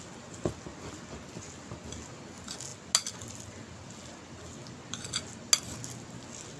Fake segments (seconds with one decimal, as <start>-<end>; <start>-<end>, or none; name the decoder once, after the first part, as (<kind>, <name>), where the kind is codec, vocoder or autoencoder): none